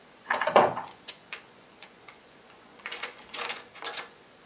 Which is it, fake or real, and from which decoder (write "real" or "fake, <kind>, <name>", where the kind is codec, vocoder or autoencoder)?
fake, vocoder, Vocos